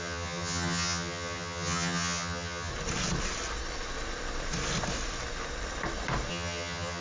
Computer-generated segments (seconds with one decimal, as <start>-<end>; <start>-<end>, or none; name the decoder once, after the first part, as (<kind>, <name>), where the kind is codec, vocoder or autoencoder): 0.0-2.7 (vocoder, HiFi-GAN); 6.3-7.0